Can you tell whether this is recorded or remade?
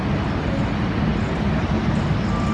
recorded